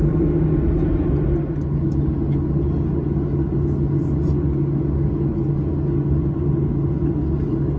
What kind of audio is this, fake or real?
real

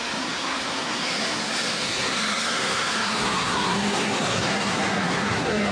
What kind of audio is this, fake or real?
fake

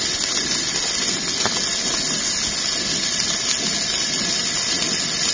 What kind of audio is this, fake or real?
real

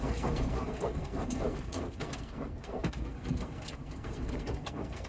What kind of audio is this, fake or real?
fake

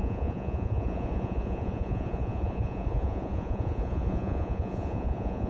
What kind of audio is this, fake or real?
fake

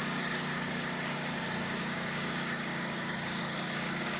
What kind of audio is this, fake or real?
fake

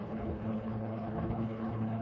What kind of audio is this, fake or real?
fake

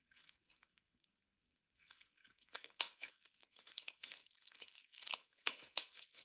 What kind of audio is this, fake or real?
fake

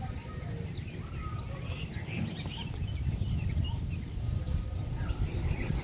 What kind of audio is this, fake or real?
real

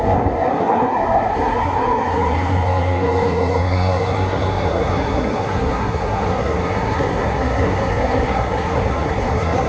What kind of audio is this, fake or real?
fake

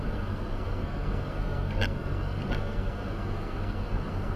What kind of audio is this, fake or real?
fake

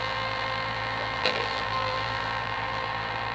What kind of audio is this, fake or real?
fake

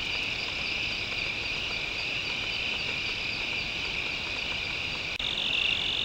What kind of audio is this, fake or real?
real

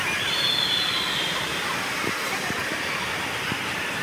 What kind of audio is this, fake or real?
real